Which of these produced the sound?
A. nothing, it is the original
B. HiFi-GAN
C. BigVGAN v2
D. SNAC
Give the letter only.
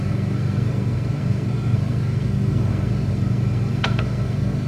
D